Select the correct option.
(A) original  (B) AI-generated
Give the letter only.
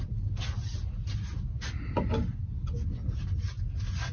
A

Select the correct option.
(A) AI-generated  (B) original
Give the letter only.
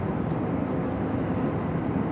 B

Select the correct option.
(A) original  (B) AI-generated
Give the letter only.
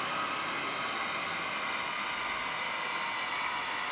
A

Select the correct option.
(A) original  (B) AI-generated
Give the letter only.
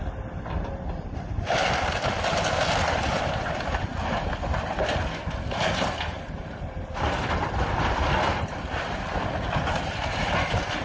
A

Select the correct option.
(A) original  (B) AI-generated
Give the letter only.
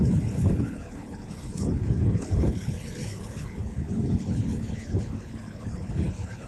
B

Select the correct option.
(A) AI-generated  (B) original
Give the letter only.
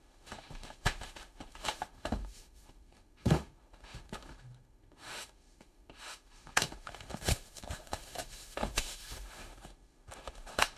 A